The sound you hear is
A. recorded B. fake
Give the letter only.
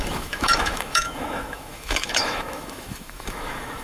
B